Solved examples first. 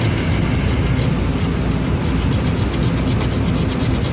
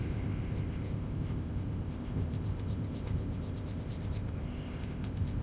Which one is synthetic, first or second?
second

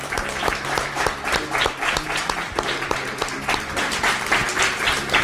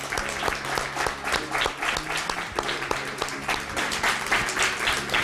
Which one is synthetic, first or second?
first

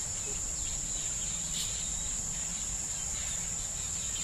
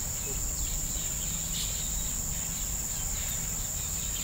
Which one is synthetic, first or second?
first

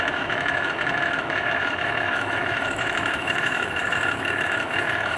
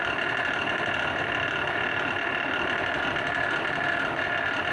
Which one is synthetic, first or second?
first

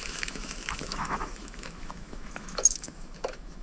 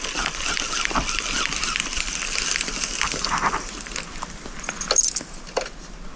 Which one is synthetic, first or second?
first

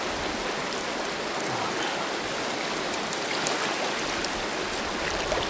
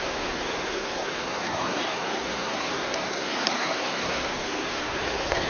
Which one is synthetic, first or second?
second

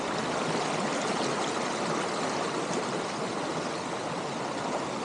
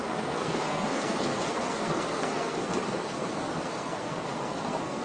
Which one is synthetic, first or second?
second